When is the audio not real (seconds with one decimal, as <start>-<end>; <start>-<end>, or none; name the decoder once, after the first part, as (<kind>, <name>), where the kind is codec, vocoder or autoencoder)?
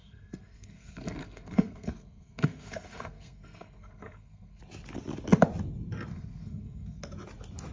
0.0-4.6 (codec, SNAC); 6.1-7.0